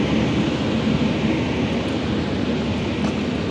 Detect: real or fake real